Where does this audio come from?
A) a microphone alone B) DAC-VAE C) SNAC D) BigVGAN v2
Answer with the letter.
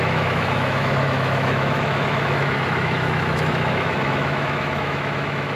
B